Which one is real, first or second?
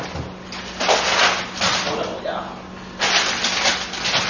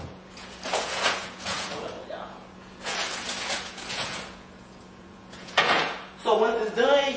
first